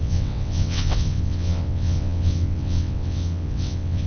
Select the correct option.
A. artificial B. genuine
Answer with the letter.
A